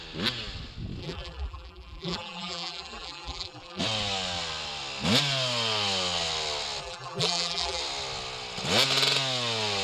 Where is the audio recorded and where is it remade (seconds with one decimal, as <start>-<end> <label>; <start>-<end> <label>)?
0.0-1.0 recorded; 1.0-3.8 remade; 3.8-6.8 recorded; 6.8-7.8 remade; 7.8-9.8 recorded